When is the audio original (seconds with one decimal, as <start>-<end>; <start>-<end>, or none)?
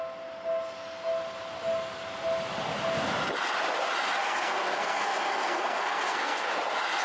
0.0-4.2; 6.5-7.0